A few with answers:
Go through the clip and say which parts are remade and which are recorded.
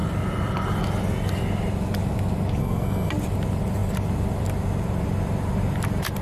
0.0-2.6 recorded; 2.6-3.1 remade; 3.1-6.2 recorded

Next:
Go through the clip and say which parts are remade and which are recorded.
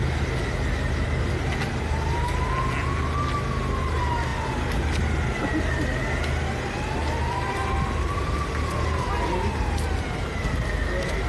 0.0-11.3 recorded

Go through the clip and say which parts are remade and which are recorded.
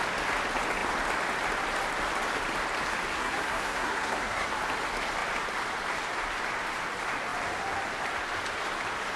0.0-3.1 recorded; 3.1-4.5 remade; 4.5-9.2 recorded